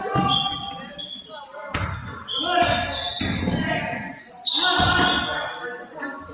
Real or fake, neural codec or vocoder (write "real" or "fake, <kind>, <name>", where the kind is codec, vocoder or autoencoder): real